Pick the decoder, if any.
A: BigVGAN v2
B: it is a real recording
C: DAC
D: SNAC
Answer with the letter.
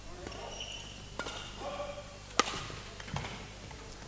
B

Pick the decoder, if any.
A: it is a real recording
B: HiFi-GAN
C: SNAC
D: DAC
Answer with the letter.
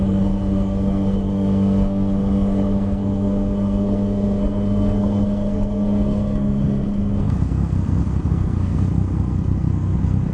C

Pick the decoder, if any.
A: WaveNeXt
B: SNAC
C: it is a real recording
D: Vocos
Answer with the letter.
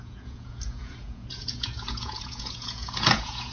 D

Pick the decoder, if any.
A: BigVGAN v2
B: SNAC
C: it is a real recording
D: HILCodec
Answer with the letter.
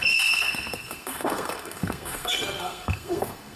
B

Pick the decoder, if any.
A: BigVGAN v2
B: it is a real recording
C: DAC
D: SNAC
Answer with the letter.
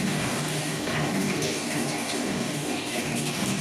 C